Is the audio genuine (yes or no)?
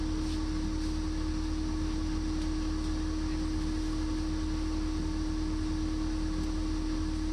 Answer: yes